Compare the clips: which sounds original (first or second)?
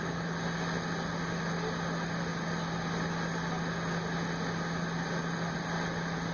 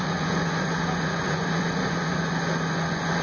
first